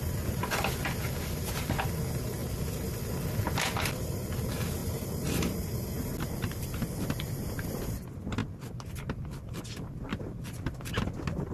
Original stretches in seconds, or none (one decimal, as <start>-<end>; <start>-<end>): 0.0-2.4; 3.0-10.1; 10.9-11.5